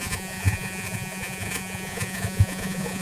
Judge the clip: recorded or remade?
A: remade